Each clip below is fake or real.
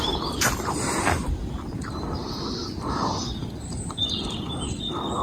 real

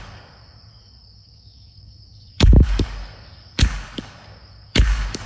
fake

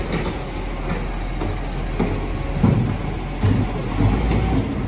real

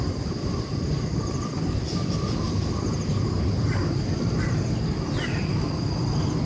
real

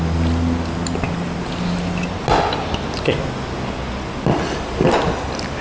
real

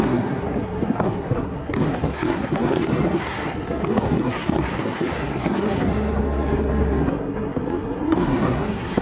fake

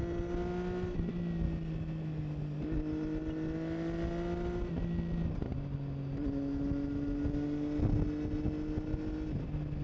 real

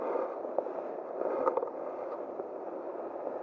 real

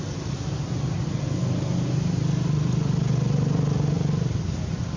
real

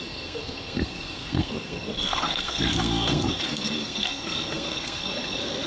fake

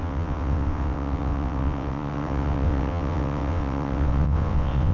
fake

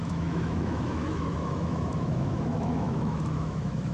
fake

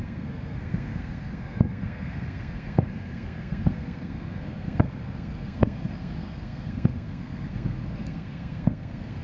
fake